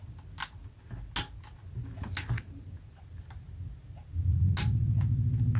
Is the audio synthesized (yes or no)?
no